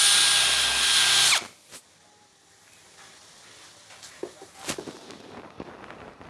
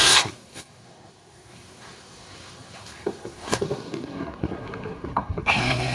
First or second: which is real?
first